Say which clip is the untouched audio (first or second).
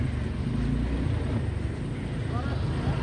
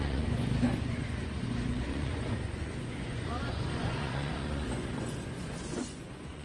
first